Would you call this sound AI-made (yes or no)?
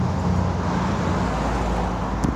no